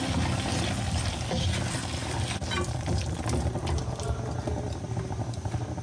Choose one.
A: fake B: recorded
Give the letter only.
B